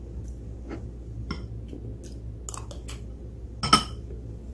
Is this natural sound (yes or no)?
yes